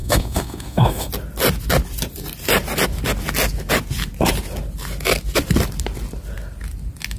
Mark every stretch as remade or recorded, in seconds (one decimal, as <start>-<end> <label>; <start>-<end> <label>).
0.0-1.1 remade; 1.1-7.2 recorded